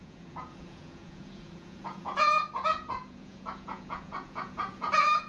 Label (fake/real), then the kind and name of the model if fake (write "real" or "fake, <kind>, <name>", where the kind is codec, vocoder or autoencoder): fake, vocoder, Vocos